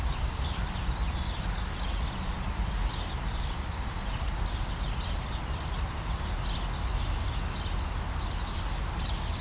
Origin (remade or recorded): recorded